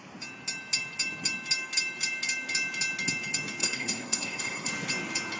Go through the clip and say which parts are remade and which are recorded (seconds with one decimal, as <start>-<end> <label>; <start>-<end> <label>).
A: 0.0-3.6 recorded; 3.6-4.7 remade; 4.7-5.4 recorded